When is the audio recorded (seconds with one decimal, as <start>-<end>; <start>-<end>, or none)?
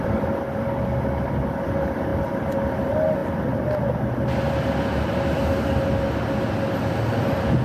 0.0-7.6